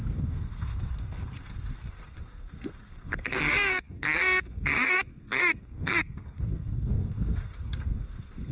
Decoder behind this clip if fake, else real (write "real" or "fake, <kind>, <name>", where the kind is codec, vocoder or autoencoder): fake, codec, SNAC